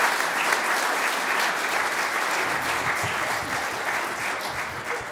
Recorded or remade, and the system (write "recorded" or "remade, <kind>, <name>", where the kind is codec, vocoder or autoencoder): recorded